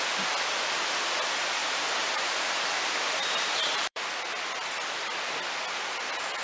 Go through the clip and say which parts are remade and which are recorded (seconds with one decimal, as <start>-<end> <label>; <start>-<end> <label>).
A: 0.0-1.6 recorded; 1.6-4.0 remade; 4.0-6.4 recorded